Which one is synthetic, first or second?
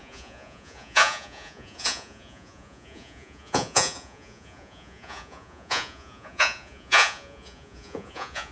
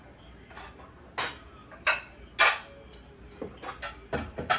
first